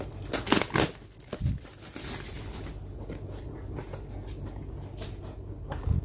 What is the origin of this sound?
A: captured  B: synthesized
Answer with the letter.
A